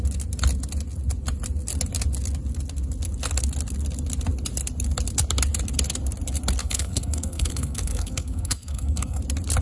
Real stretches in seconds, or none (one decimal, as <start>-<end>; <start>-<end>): 0.0-6.6; 9.2-9.6